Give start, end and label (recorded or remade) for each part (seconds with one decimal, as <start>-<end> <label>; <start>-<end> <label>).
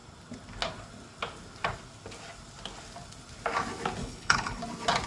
0.0-4.0 recorded; 4.0-4.6 remade; 4.6-5.1 recorded